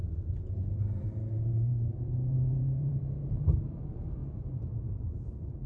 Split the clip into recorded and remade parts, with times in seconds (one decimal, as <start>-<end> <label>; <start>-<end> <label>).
0.0-5.7 remade

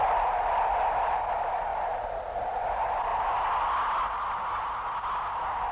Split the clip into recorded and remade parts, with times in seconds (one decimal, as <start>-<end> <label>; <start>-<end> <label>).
0.0-1.7 recorded; 1.7-2.3 remade; 2.3-3.1 recorded; 3.1-3.6 remade; 3.6-5.7 recorded

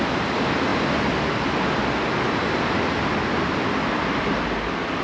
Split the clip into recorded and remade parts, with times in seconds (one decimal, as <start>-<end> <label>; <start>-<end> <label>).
0.0-5.0 recorded

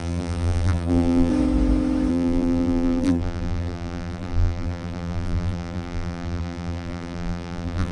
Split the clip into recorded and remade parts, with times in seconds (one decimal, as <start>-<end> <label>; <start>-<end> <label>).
0.0-1.3 remade; 1.3-2.1 recorded; 2.1-7.9 remade

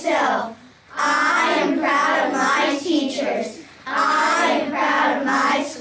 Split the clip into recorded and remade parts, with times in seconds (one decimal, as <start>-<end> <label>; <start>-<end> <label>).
0.0-5.8 recorded

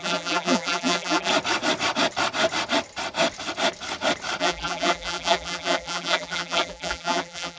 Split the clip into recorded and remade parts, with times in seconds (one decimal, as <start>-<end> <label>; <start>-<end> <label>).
0.0-1.3 remade; 1.3-4.4 recorded; 4.4-7.6 remade